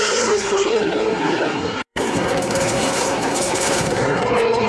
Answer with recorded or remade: remade